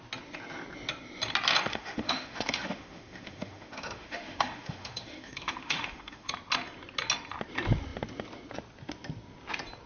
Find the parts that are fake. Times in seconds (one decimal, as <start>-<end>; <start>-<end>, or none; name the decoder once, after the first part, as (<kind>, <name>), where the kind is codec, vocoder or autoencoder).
1.7-6.3 (autoencoder, DAC-VAE)